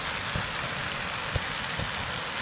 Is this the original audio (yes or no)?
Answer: yes